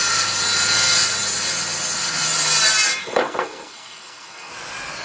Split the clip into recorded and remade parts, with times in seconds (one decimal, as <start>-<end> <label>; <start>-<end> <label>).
0.0-3.0 recorded; 3.0-4.5 remade; 4.5-5.0 recorded